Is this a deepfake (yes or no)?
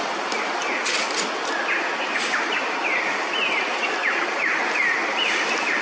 no